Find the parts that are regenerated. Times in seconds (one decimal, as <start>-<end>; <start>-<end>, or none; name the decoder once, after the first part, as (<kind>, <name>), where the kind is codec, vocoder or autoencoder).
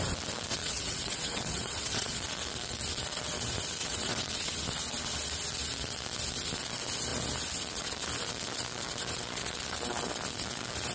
0.5-2.1 (vocoder, WaveNeXt); 3.8-4.5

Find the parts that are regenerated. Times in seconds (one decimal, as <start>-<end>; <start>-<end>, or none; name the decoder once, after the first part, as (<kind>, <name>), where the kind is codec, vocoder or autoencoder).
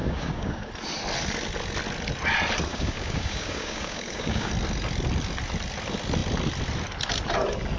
0.0-0.7 (codec, DAC); 2.7-4.5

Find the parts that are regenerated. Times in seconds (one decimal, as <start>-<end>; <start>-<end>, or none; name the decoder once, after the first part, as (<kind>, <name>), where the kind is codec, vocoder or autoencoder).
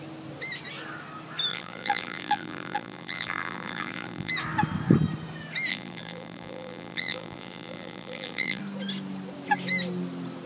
1.5-4.3 (vocoder, BigVGAN v2); 5.7-8.6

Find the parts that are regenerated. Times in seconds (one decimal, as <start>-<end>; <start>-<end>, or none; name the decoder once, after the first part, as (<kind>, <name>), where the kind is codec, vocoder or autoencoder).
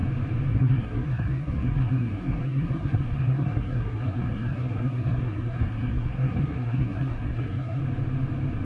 0.5-7.8 (codec, SNAC)